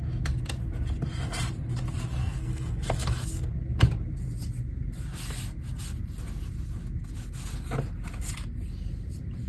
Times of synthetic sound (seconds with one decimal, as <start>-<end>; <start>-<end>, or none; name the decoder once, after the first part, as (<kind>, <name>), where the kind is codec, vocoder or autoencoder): 2.2-3.5 (codec, SNAC)